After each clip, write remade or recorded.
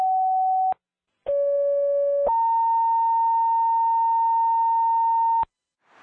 recorded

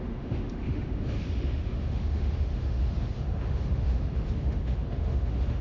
remade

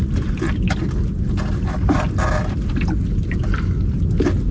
recorded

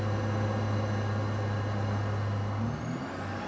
recorded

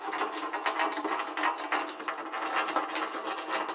recorded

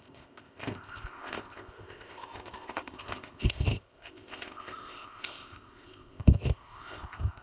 remade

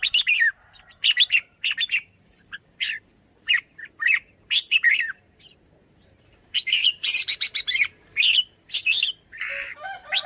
remade